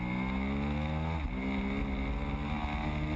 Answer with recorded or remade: recorded